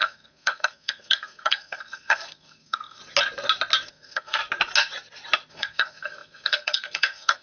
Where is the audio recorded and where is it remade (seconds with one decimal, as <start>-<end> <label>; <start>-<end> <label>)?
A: 0.0-3.0 remade; 3.0-3.9 recorded; 3.9-4.4 remade; 4.4-5.5 recorded; 5.5-7.4 remade